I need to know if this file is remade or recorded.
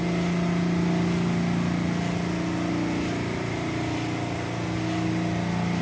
recorded